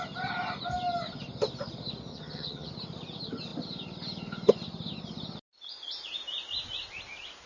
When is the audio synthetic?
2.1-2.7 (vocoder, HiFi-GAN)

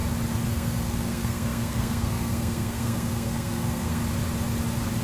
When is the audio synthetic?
0.5-4.0 (codec, SNAC)

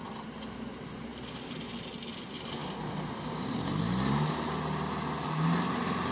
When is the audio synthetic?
none

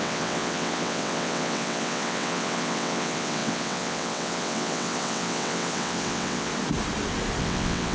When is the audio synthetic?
0.0-6.5 (vocoder, WaveNeXt); 7.4-7.9

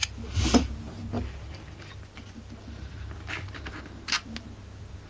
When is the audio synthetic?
none

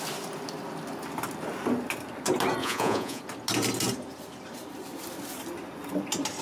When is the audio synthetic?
2.6-3.2 (vocoder, Vocos)